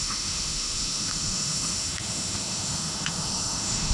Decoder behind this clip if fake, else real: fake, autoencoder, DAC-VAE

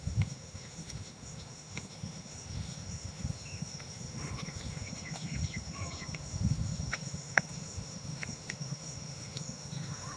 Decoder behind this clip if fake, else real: fake, autoencoder, DAC-VAE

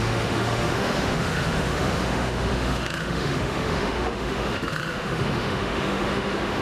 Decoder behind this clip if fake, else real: fake, autoencoder, DAC-VAE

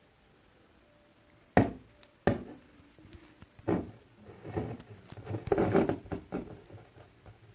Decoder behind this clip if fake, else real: real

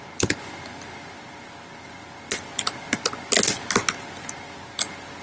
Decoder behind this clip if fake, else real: real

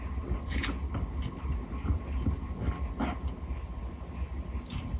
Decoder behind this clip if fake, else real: real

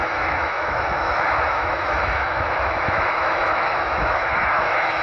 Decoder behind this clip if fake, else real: fake, autoencoder, DAC-VAE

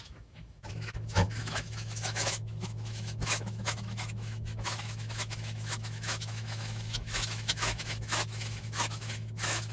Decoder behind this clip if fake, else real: fake, autoencoder, DAC-VAE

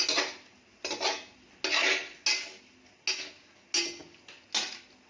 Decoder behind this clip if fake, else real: real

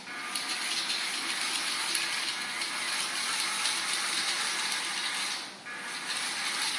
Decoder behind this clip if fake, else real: real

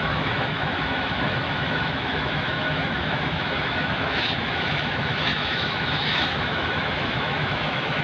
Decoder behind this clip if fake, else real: fake, autoencoder, DAC-VAE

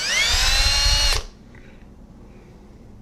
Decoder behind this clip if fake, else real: real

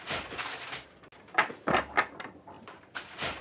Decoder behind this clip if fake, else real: real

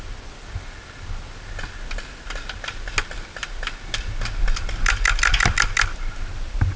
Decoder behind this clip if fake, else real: real